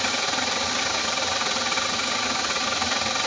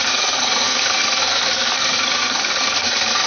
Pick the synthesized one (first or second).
second